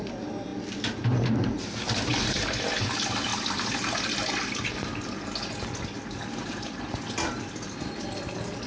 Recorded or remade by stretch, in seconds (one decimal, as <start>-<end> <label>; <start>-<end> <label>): 0.0-8.7 recorded